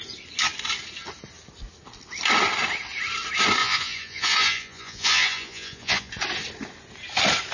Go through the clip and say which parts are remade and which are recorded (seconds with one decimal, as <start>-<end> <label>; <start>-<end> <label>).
0.0-3.6 recorded; 3.6-6.1 remade; 6.1-7.5 recorded